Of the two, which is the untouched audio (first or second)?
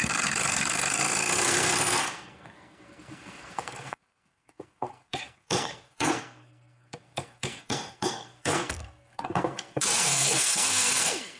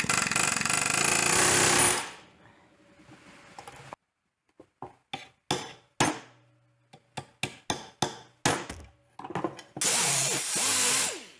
second